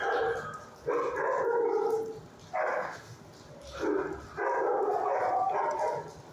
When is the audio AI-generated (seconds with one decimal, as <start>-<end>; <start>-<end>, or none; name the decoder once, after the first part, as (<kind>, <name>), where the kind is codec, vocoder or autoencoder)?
2.7-3.2 (autoencoder, DAC-VAE)